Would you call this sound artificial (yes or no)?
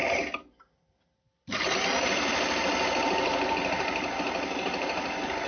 no